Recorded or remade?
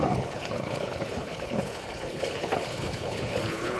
remade